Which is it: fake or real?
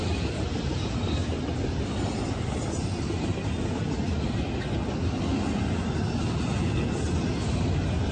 real